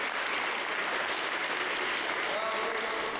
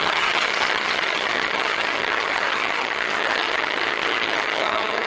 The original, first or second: first